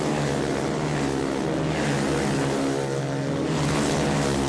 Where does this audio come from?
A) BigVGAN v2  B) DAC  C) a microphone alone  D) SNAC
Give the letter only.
C